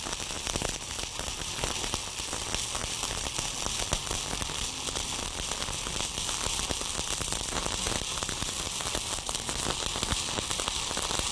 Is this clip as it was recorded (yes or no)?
yes